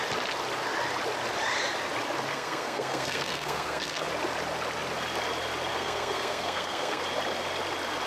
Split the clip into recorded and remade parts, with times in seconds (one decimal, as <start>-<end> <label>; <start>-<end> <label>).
0.0-2.3 recorded; 2.3-4.1 remade; 4.1-5.7 recorded; 5.7-7.0 remade; 7.0-8.1 recorded